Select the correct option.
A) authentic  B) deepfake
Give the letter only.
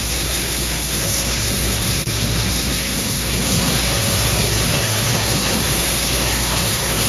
B